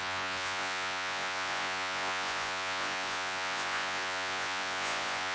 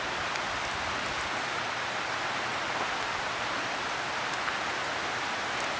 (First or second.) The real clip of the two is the second